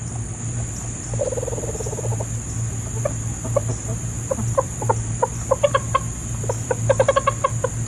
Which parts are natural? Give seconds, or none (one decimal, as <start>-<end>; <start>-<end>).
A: 0.0-7.9